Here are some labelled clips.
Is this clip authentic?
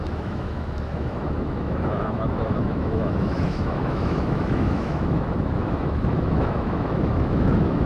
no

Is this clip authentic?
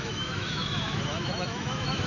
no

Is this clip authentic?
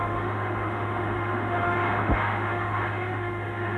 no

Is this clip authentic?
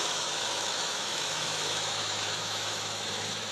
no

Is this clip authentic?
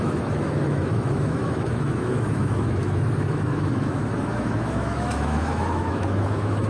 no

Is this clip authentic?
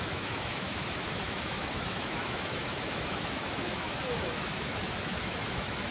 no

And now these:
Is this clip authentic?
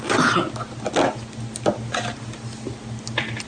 yes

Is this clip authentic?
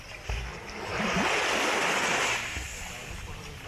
yes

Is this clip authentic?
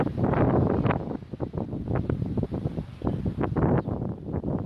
yes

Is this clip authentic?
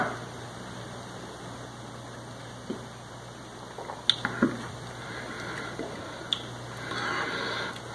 yes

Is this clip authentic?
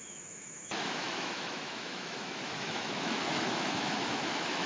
no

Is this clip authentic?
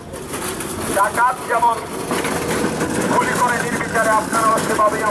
yes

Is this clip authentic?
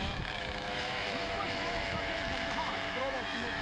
no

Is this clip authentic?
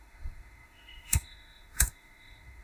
no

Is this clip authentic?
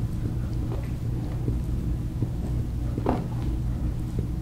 yes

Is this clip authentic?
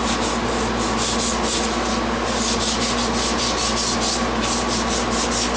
yes